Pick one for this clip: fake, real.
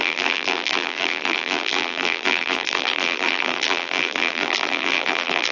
fake